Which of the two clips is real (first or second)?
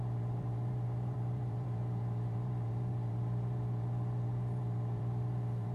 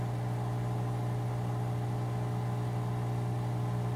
second